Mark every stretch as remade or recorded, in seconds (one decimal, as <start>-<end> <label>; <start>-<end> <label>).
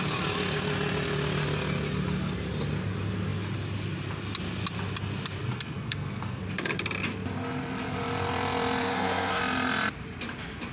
0.0-5.4 recorded; 5.4-6.4 remade; 6.4-8.8 recorded; 8.8-9.4 remade; 9.4-10.7 recorded